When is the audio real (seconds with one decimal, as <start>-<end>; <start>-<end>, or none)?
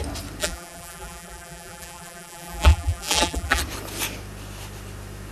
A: 0.0-0.4; 3.6-5.3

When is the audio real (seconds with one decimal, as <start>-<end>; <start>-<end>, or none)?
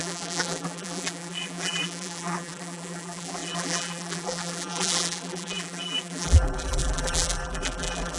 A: none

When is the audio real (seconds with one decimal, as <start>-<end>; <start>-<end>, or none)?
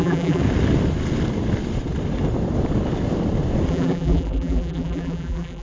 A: 0.4-3.7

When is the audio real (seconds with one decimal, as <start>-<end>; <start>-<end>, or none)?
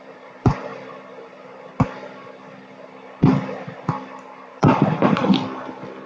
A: 0.7-4.4; 5.2-6.1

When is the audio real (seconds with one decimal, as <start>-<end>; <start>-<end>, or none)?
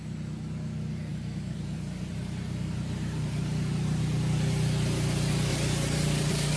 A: 0.0-1.1; 4.0-5.5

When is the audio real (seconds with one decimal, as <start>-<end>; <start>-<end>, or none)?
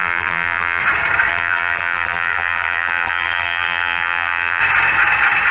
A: 0.8-1.3; 4.6-5.5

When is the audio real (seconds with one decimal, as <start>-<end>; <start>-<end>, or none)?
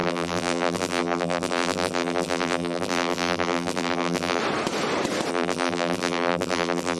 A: 4.4-5.3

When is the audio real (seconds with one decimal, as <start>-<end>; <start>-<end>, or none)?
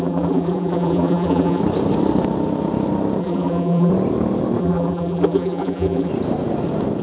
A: 1.6-3.2; 3.9-4.6; 6.1-7.0